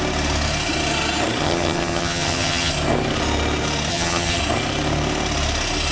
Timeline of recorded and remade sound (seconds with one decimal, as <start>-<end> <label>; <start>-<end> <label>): 0.0-1.4 recorded; 1.4-2.7 remade; 2.7-3.9 recorded; 3.9-4.4 remade; 4.4-5.9 recorded